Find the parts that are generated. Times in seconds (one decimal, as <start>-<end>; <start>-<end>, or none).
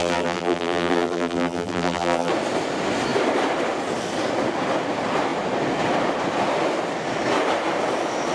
0.0-2.3